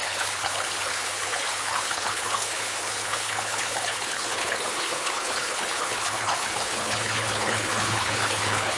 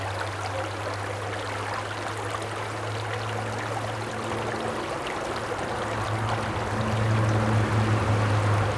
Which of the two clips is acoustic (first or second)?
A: second